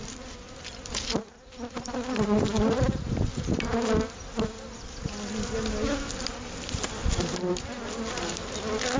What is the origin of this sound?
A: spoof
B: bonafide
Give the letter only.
B